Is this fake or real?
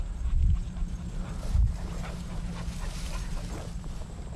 fake